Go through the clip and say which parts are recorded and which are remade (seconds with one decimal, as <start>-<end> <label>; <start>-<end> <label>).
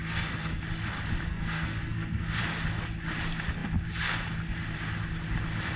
0.0-0.6 remade; 0.6-1.3 recorded; 1.3-2.4 remade; 2.4-5.8 recorded